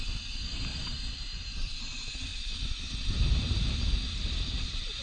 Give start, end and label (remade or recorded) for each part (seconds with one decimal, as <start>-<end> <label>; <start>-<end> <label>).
0.0-0.7 recorded; 0.7-1.8 remade; 1.8-2.3 recorded; 2.3-2.8 remade; 2.8-4.1 recorded; 4.1-5.0 remade